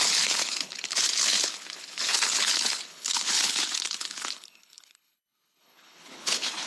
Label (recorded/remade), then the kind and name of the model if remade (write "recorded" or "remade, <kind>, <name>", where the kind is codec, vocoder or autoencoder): remade, codec, HILCodec